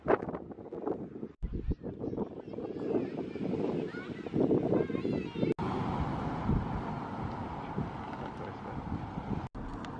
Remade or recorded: recorded